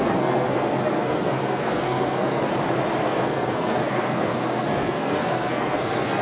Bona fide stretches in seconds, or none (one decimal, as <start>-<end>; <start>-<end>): 2.5-3.0